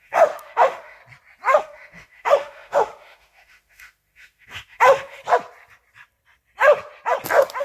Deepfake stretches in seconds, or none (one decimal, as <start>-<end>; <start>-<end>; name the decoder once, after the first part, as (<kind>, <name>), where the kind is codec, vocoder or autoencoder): 0.0-1.0 (autoencoder, DAC-VAE); 1.6-5.2